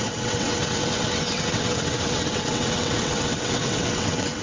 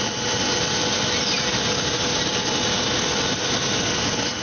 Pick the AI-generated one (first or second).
first